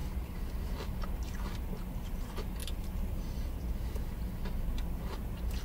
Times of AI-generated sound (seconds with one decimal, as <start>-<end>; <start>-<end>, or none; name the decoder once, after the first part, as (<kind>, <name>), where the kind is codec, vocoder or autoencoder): 0.0-0.9 (vocoder, BigVGAN v2); 2.6-3.2